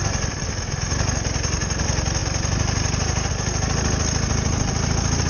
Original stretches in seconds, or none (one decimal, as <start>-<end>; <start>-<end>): 0.0-5.3